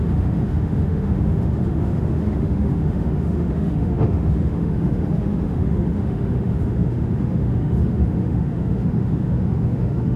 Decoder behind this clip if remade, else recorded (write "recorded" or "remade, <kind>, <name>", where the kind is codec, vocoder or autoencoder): remade, autoencoder, DAC-VAE